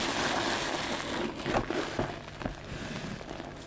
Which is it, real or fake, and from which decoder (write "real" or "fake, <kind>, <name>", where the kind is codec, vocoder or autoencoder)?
real